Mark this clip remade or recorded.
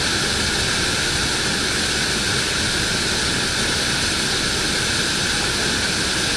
recorded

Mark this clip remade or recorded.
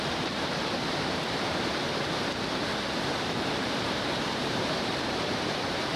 remade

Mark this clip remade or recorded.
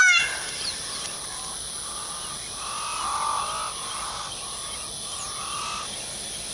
recorded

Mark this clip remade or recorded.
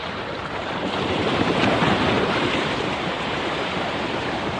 remade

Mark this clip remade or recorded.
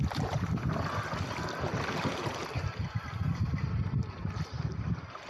recorded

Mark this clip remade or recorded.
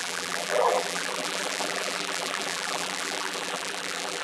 remade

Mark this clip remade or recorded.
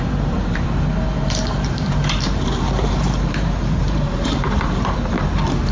remade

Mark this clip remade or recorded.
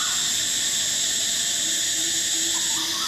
recorded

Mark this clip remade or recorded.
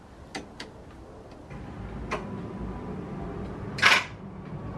recorded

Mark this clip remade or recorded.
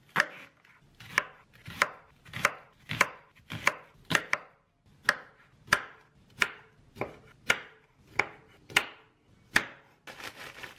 recorded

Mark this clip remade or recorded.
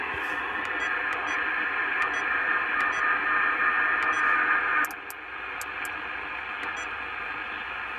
recorded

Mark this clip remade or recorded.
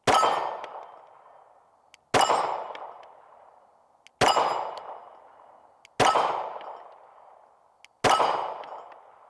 recorded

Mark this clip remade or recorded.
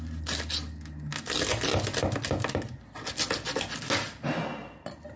recorded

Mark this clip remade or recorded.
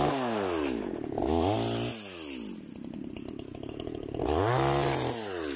recorded